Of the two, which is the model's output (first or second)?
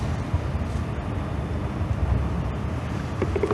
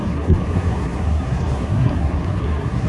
second